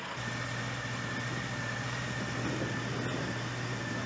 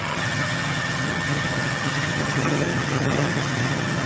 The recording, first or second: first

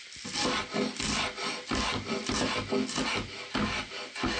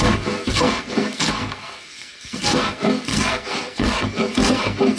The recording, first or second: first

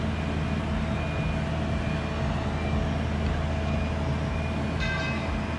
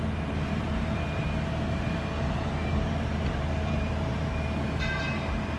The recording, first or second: first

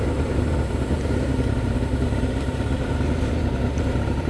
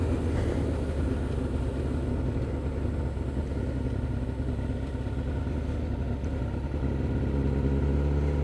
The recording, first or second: second